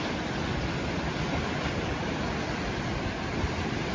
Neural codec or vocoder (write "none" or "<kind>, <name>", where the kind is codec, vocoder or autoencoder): none